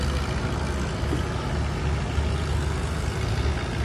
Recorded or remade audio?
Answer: recorded